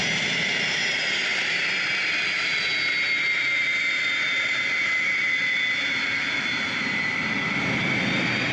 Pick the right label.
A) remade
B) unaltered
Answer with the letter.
B